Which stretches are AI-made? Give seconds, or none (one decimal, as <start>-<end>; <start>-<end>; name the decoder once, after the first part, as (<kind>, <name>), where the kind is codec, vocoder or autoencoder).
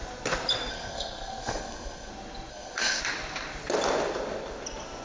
0.7-2.1 (codec, SNAC); 2.5-3.0